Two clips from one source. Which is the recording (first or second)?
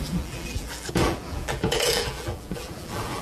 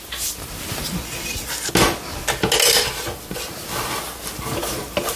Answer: second